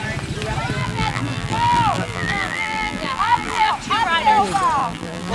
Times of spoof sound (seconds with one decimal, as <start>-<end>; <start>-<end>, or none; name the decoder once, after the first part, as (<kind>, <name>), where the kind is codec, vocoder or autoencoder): 0.8-3.7 (vocoder, BigVGAN v2); 4.8-5.3